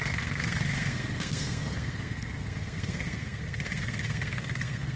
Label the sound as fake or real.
fake